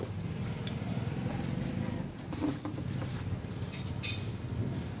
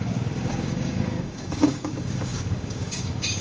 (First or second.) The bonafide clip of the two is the first